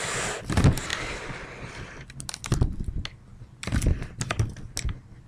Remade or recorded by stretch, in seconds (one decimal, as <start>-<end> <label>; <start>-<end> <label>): 0.0-5.3 recorded